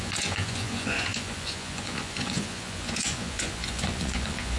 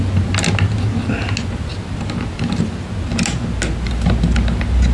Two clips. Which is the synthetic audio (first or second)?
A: first